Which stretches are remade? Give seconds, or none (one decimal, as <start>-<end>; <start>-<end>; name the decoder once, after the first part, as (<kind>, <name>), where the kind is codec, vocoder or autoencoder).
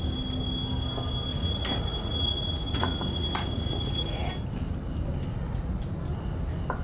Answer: 1.3-4.3 (vocoder, Vocos); 5.3-5.8